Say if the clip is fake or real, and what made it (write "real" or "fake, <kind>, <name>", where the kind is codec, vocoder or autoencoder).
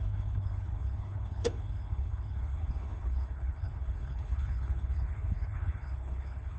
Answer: fake, codec, HILCodec